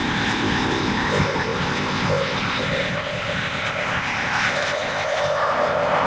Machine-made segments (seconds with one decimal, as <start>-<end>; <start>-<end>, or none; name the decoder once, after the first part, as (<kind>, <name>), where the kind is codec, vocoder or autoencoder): 0.0-6.1 (codec, ZipCodec)